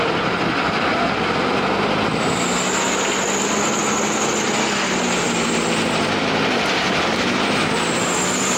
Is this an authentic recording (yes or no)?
yes